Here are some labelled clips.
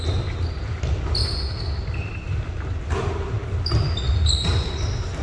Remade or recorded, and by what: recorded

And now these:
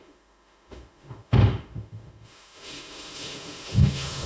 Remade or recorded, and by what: remade, autoencoder, DAC-VAE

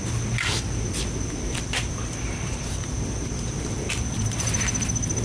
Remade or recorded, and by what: recorded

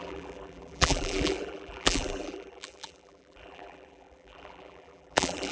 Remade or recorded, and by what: remade, vocoder, BigVGAN v2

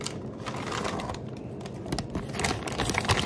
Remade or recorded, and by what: recorded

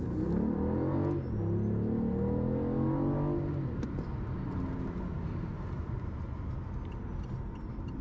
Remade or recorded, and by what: recorded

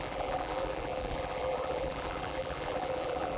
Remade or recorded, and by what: remade, vocoder, BigVGAN v2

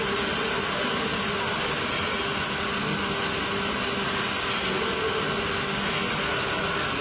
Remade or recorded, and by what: recorded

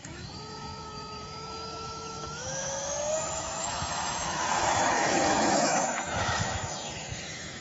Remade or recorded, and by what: remade, autoencoder, DAC-VAE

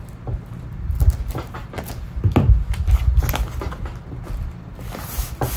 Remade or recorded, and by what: recorded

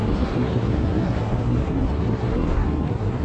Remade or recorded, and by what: remade, codec, SNAC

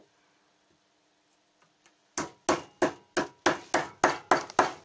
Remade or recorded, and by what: recorded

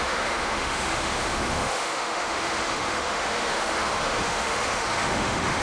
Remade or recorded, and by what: remade, autoencoder, DAC-VAE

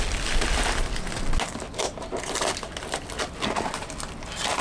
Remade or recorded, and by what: recorded